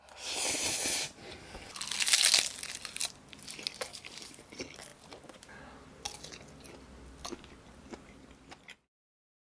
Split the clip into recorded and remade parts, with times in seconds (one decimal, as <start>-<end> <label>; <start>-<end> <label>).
0.0-3.9 recorded; 3.9-4.4 remade; 4.4-9.5 recorded